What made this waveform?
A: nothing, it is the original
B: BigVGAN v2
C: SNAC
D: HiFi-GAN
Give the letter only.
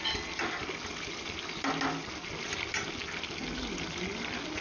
A